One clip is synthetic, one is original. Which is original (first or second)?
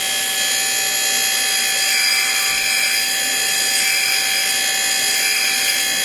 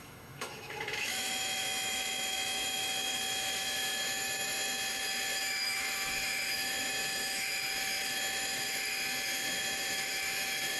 first